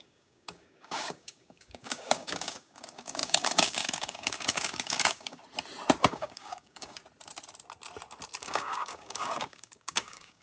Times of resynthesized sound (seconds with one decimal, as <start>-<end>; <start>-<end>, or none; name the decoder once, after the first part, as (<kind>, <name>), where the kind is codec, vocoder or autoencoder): 0.0-5.4 (codec, DAC); 6.1-7.0; 8.4-10.4